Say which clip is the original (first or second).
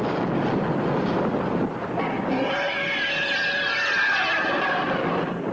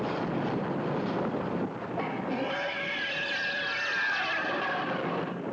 first